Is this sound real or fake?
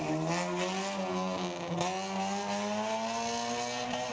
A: real